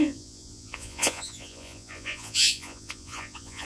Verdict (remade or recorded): remade